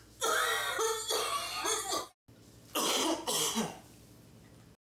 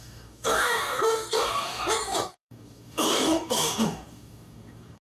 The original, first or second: first